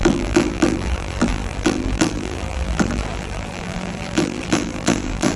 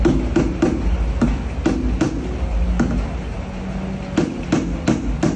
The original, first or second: second